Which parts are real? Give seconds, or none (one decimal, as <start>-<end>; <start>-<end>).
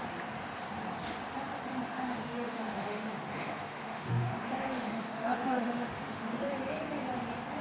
0.0-1.9; 6.5-7.6